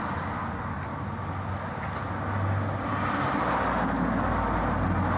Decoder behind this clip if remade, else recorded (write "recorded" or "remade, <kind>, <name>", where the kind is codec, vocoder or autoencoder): recorded